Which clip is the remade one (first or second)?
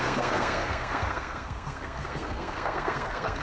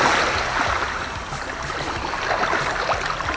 first